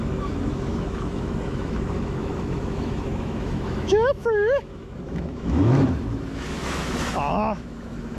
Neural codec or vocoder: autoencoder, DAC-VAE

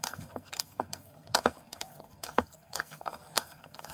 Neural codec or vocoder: codec, SNAC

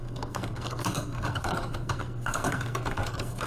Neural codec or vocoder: codec, SNAC